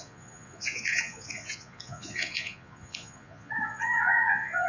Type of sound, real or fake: fake